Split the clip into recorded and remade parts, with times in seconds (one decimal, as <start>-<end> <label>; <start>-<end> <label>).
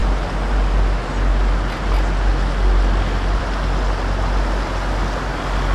0.0-5.7 recorded